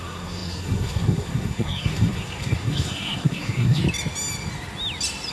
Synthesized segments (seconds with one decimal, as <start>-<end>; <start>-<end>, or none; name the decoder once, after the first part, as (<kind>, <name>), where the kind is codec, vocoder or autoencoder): 0.0-3.8 (codec, SNAC)